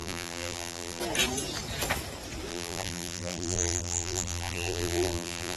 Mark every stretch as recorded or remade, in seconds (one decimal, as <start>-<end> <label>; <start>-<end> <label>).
0.0-1.0 remade; 1.0-2.5 recorded; 2.5-5.6 remade